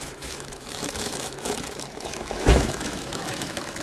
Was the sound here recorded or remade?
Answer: remade